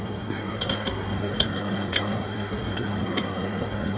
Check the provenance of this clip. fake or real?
fake